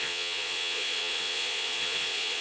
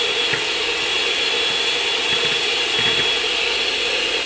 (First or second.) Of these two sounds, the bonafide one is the second